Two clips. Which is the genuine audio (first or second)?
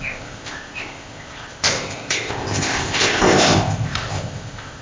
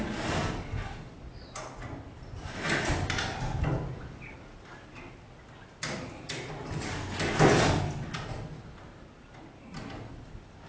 second